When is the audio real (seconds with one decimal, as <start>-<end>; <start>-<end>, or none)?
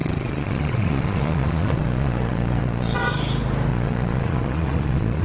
3.1-3.7